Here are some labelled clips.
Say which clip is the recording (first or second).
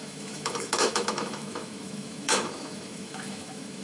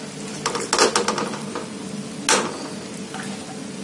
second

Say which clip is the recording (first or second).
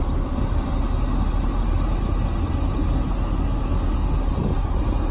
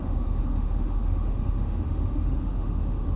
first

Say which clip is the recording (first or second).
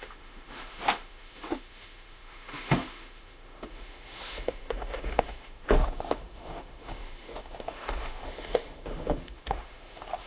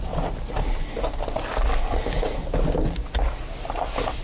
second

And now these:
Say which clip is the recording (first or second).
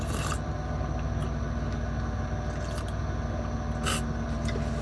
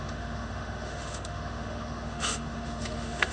first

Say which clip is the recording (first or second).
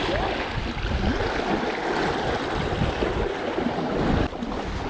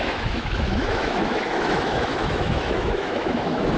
first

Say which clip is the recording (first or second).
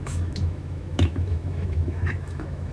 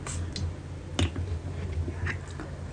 second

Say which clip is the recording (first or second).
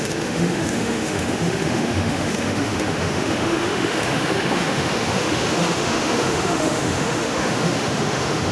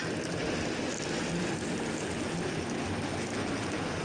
second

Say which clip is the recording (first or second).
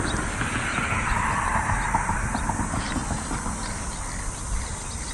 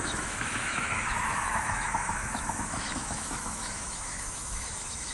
first